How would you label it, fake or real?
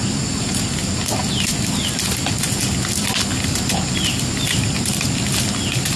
real